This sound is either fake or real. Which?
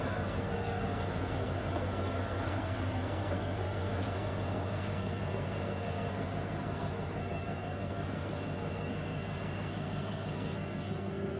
fake